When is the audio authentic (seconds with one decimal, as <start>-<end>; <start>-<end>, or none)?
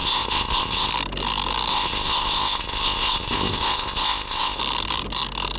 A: 0.9-1.7; 4.6-5.6